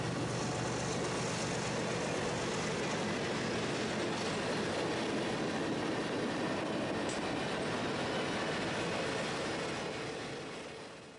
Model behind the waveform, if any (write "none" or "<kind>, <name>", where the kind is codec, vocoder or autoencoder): none